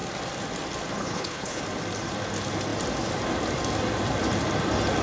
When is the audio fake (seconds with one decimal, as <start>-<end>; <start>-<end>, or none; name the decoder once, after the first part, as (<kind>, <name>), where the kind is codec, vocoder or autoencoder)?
1.0-1.6 (codec, HILCodec)